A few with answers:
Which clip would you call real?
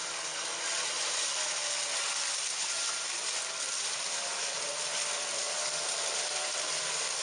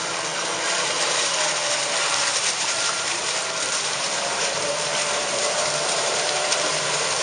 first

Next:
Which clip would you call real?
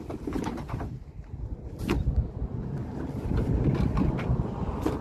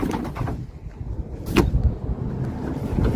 second